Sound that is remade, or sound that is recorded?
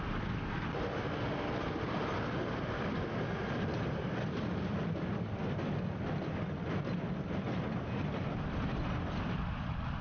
recorded